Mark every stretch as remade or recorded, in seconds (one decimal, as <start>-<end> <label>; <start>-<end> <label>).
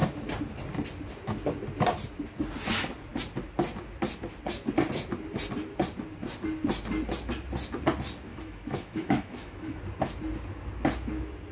0.0-8.3 recorded; 8.3-9.8 remade; 9.8-11.5 recorded